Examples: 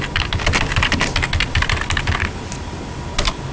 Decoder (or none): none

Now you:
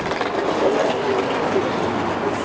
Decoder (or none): none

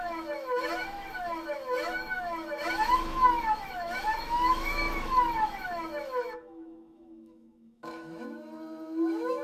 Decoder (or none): autoencoder, DAC-VAE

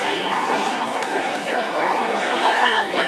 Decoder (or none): codec, SNAC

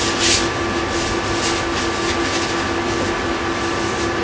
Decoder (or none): none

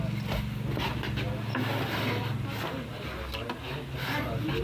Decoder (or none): none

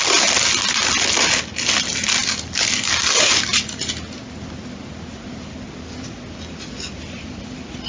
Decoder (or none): none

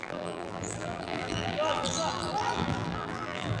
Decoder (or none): vocoder, BigVGAN v2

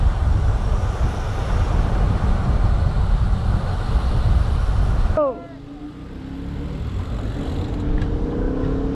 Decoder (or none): none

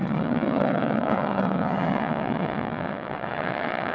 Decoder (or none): vocoder, WaveNeXt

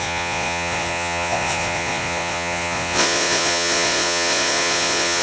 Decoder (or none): vocoder, Vocos